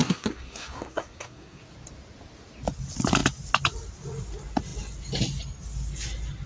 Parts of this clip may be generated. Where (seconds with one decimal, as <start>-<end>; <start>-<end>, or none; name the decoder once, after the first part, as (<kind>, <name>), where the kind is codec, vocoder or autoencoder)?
0.0-1.6 (codec, SNAC)

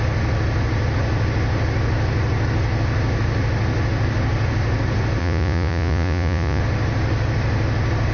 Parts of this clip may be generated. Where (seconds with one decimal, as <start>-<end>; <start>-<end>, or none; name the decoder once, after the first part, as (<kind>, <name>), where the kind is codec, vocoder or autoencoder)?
5.2-6.6 (vocoder, Vocos)

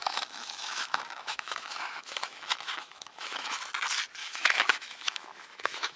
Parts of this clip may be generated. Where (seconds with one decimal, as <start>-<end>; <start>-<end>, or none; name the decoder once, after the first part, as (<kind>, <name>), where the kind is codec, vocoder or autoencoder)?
0.0-3.6 (autoencoder, DAC-VAE); 4.2-6.0

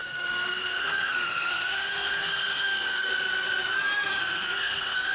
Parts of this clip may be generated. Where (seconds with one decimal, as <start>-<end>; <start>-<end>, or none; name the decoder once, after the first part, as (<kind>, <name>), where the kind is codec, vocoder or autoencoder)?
0.0-3.1 (codec, SNAC); 4.1-5.1

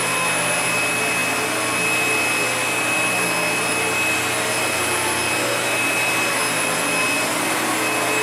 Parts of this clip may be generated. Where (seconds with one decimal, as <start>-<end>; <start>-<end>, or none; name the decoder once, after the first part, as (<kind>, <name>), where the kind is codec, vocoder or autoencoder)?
none

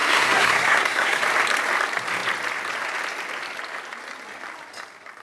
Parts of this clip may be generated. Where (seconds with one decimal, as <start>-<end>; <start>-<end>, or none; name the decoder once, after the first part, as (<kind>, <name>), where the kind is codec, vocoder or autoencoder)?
0.0-1.2 (codec, SNAC)

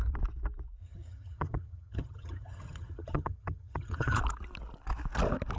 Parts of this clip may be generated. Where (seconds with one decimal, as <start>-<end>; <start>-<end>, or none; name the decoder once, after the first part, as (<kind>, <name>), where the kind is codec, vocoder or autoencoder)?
0.8-4.2 (vocoder, HiFi-GAN)

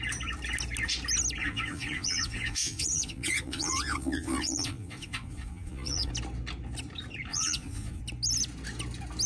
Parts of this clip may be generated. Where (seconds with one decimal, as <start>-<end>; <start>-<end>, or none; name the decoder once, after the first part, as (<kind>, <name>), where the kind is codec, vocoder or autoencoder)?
1.4-6.1 (vocoder, Vocos); 7.3-8.0